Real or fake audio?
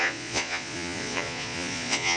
fake